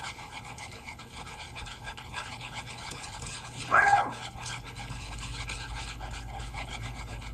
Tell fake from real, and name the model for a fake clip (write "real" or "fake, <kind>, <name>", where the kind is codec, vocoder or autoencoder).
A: fake, codec, HILCodec